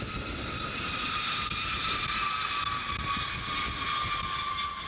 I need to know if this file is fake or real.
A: real